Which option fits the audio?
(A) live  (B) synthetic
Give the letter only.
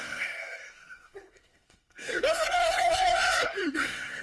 B